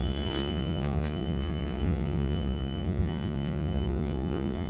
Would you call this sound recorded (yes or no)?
no